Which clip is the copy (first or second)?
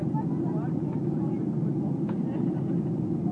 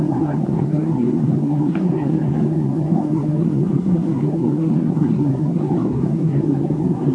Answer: second